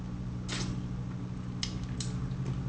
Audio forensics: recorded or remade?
recorded